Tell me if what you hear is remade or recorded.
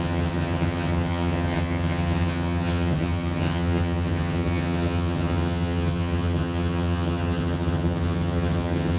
remade